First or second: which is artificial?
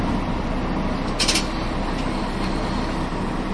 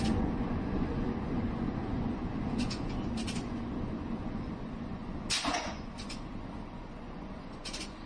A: second